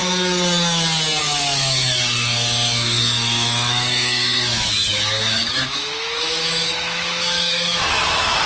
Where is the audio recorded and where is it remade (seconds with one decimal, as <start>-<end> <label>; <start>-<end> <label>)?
0.0-1.2 recorded; 1.2-8.5 remade

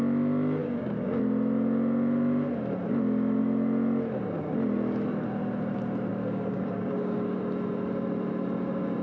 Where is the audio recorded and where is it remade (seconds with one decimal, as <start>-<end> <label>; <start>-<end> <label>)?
0.0-0.6 recorded; 0.6-1.2 remade; 1.2-6.1 recorded; 6.1-7.4 remade; 7.4-9.0 recorded

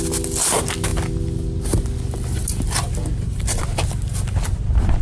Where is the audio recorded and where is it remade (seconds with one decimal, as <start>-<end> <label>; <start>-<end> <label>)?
0.0-5.0 recorded